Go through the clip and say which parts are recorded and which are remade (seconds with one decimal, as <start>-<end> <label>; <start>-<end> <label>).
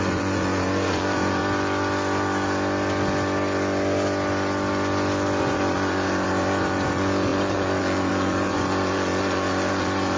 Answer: 0.0-1.4 remade; 1.4-5.4 recorded; 5.4-10.2 remade